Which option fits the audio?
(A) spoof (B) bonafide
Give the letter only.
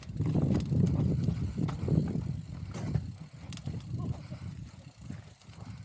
B